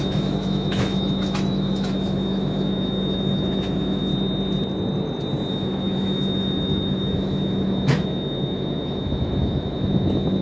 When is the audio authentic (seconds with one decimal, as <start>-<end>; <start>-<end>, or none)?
4.1-5.5